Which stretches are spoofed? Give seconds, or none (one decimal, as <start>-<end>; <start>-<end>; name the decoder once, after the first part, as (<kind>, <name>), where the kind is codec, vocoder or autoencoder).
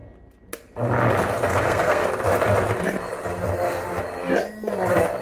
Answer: 1.3-2.0 (codec, SNAC)